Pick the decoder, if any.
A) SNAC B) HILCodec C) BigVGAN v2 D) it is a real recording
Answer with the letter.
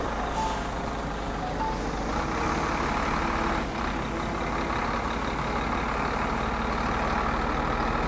D